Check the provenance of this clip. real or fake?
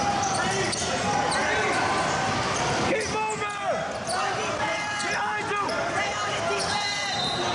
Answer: real